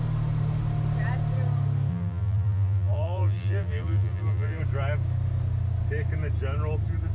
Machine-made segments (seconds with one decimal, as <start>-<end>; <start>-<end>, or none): 1.9-4.6